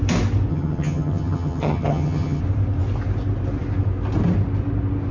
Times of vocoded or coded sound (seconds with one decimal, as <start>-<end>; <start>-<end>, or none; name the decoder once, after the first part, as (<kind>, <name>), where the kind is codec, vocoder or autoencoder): 0.5-2.4 (vocoder, HiFi-GAN)